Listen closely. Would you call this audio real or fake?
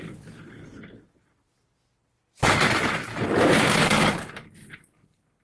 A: real